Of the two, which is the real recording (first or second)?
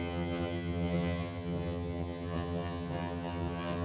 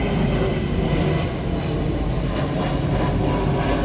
second